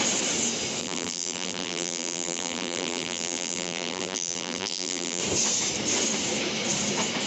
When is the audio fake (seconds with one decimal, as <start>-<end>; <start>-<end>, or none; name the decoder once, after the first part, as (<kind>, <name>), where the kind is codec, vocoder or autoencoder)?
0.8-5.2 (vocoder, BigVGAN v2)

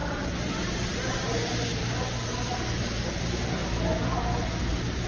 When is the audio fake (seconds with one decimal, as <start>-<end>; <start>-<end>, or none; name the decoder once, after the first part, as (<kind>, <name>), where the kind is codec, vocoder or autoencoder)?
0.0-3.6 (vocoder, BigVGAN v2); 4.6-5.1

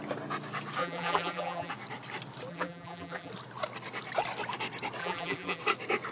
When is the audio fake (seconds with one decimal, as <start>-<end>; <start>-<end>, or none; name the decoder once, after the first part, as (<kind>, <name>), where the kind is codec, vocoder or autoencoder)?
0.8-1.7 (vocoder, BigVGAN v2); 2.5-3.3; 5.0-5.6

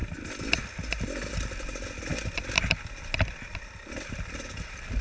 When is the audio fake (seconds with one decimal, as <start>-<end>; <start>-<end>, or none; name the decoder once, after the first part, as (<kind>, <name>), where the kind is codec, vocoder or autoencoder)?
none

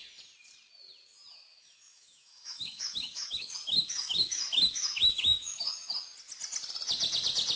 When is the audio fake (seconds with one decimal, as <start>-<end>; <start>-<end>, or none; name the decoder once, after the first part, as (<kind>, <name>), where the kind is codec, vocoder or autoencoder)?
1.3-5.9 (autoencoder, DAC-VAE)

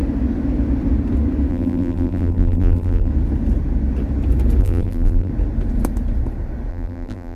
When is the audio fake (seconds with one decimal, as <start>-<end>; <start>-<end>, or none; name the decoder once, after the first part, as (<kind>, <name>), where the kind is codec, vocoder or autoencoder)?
1.5-3.1 (vocoder, BigVGAN v2); 4.6-5.3; 6.7-7.4

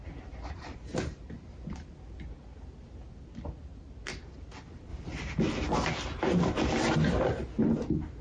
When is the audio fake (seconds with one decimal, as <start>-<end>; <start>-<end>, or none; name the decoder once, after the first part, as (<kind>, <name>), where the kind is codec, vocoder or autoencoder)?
0.0-1.9 (vocoder, BigVGAN v2); 4.9-7.6

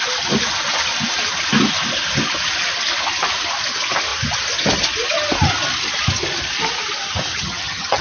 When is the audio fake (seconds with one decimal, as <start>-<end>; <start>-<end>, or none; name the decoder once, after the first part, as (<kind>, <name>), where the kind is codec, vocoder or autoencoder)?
7.3-8.0 (vocoder, HiFi-GAN)